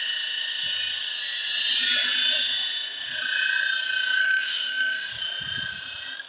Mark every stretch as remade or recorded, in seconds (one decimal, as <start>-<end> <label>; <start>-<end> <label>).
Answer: 0.0-4.2 recorded; 4.2-5.1 remade; 5.1-6.3 recorded